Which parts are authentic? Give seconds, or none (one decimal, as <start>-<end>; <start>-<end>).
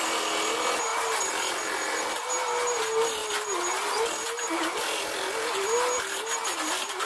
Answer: 0.0-7.1